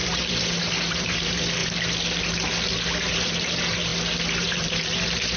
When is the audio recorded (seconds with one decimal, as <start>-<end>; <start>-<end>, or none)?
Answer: 1.6-3.0; 3.9-4.4